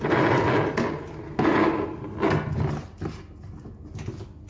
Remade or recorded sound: recorded